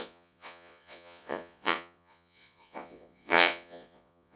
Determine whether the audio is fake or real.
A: fake